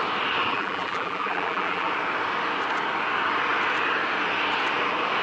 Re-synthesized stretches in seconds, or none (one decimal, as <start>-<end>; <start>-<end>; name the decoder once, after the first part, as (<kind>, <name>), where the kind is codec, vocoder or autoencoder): 0.5-1.9 (vocoder, BigVGAN v2)